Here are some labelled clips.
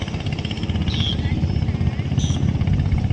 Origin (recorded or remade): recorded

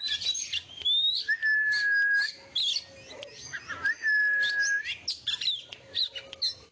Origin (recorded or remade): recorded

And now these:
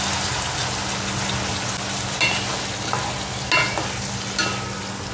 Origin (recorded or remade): recorded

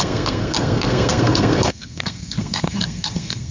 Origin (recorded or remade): remade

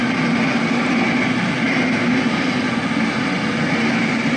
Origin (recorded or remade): recorded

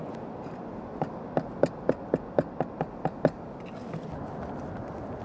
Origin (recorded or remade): recorded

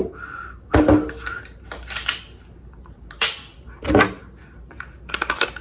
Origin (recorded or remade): recorded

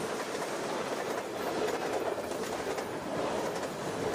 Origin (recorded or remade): recorded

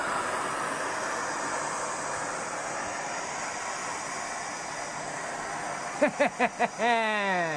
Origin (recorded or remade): recorded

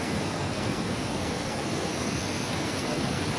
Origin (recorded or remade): remade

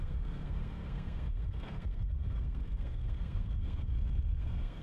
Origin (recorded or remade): remade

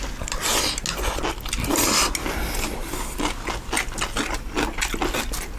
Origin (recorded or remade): recorded